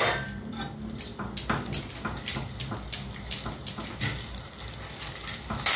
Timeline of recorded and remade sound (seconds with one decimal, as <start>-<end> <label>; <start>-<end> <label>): 0.0-5.8 recorded